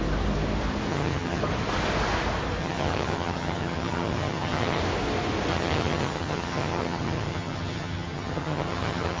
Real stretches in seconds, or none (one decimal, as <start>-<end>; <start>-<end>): 0.0-0.9; 1.4-2.6; 4.8-5.5